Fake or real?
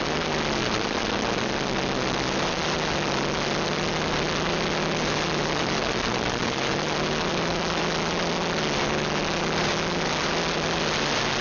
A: real